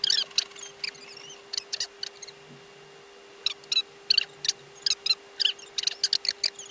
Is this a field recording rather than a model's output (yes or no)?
yes